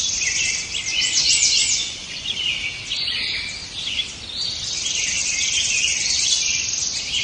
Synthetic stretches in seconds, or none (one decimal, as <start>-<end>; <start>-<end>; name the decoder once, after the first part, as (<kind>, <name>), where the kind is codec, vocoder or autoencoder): 0.9-2.3 (vocoder, Vocos)